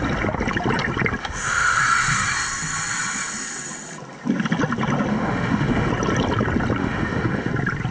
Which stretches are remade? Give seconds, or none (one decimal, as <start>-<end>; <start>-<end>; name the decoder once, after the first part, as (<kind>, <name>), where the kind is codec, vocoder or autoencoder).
1.2-1.8 (autoencoder, DAC-VAE); 5.1-5.9; 6.8-7.5